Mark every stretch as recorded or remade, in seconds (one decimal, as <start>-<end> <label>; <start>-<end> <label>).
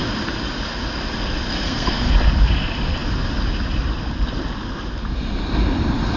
0.0-1.5 recorded; 1.5-2.1 remade; 2.1-6.2 recorded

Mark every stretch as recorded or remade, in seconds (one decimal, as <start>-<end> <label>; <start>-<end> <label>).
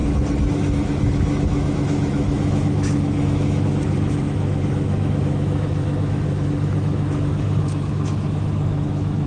0.0-0.5 recorded; 0.5-9.3 remade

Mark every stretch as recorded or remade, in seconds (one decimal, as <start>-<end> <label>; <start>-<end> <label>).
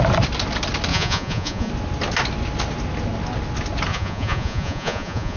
0.0-0.9 recorded; 0.9-1.7 remade; 1.7-3.9 recorded; 3.9-5.4 remade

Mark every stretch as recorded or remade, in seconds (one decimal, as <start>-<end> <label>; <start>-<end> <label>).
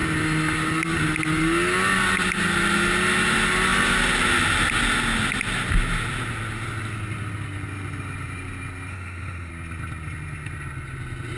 0.0-8.9 recorded; 8.9-9.5 remade; 9.5-11.4 recorded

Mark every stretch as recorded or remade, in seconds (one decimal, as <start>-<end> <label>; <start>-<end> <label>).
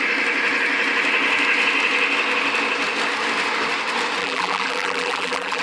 0.0-4.2 recorded; 4.2-5.6 remade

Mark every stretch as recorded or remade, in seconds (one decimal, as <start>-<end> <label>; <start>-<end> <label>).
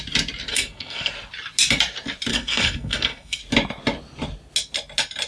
0.0-0.5 recorded; 0.5-1.1 remade; 1.1-2.3 recorded; 2.3-3.4 remade; 3.4-5.3 recorded